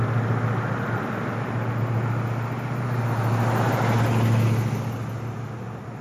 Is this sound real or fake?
real